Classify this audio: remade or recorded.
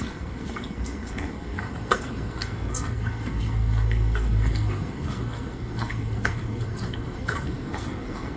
remade